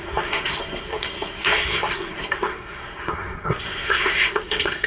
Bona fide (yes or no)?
no